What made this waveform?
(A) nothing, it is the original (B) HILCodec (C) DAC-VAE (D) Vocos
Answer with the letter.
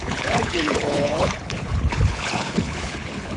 B